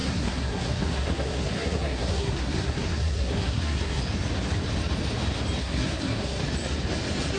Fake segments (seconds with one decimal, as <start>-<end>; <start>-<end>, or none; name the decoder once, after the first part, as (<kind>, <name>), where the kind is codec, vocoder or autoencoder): 0.0-4.0 (codec, SNAC); 5.6-6.4